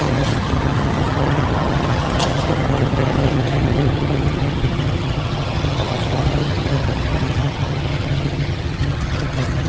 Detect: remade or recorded remade